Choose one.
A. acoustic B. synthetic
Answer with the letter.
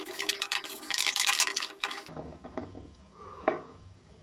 B